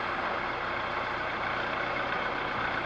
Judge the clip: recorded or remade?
recorded